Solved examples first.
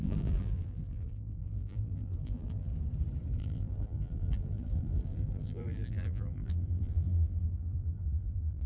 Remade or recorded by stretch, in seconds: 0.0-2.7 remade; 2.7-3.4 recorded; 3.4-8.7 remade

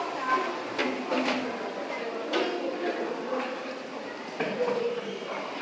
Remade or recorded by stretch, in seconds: 0.0-0.8 remade; 0.8-4.2 recorded; 4.2-5.6 remade